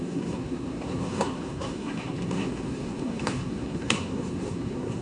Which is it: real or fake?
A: fake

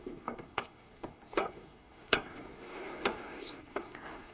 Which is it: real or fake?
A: fake